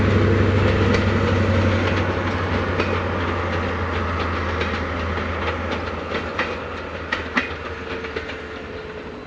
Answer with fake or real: real